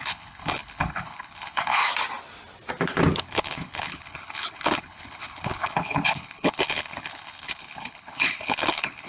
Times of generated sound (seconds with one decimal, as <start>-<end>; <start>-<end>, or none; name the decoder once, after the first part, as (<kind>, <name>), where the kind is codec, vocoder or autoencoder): 0.0-1.8 (codec, HILCodec); 3.2-9.1

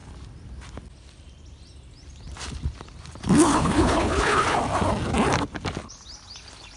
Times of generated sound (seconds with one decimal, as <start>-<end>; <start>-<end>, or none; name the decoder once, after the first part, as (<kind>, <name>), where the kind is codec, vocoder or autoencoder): 3.5-4.6 (codec, HILCodec)